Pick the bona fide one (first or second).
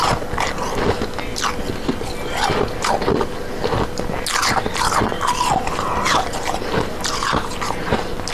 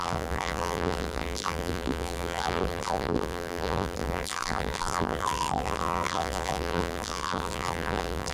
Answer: first